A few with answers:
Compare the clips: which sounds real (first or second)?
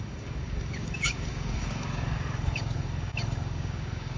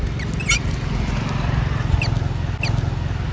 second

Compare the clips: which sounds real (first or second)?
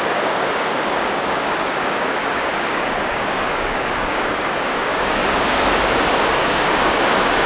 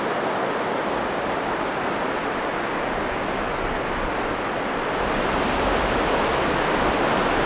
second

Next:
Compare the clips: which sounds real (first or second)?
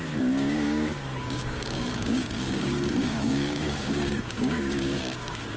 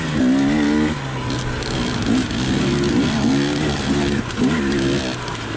second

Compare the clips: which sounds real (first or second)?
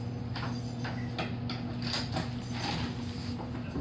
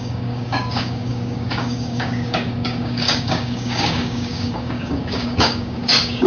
first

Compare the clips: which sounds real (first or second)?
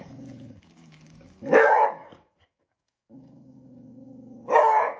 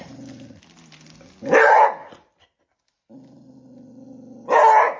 second